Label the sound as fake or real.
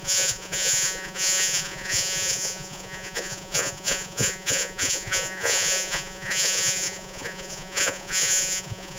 fake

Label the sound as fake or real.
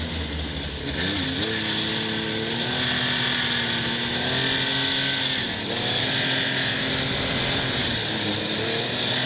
real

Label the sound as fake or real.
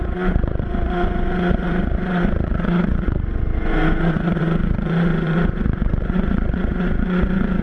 fake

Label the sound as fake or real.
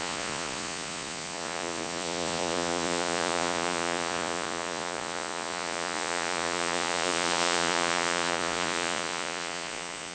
fake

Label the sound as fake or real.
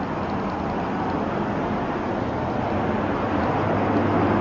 real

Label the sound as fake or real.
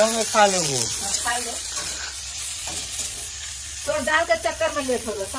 fake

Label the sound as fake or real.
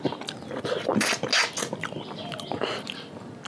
real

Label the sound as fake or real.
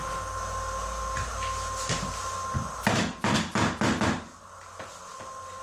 real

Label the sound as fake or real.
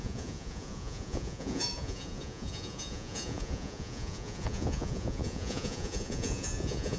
fake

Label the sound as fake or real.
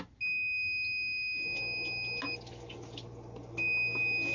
real